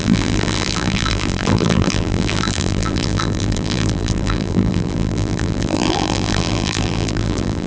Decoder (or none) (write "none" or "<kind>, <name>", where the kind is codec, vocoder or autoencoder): vocoder, BigVGAN v2